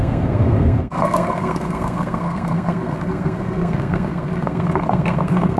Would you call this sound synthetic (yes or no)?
yes